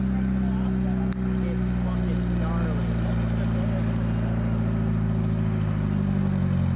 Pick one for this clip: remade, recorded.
recorded